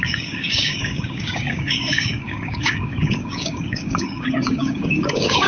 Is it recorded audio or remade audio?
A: remade